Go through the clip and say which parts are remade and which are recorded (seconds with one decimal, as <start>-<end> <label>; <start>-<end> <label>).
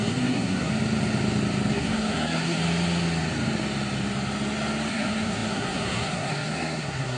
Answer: 0.0-0.7 remade; 0.7-1.7 recorded; 1.7-2.6 remade; 2.6-4.9 recorded; 4.9-7.2 remade